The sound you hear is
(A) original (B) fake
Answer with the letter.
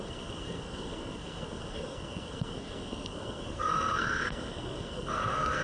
B